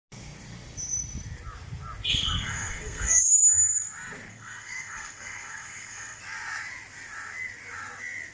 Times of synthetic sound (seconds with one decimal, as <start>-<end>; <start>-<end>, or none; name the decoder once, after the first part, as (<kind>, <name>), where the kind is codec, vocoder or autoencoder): 2.1-3.3 (codec, SNAC); 4.3-6.2